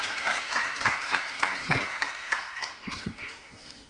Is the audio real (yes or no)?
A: no